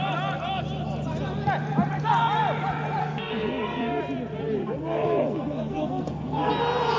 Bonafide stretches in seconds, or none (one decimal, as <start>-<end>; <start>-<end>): 0.0-3.0; 4.0-4.6; 6.5-7.0